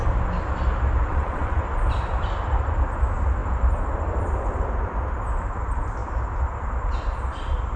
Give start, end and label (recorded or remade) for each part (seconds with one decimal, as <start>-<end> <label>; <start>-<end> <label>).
0.0-1.1 recorded; 1.1-1.6 remade; 1.6-7.8 recorded